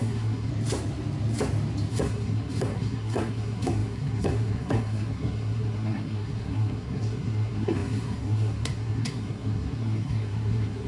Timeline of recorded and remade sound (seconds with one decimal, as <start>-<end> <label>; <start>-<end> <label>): 0.0-0.5 remade; 0.5-1.9 recorded; 1.9-10.9 remade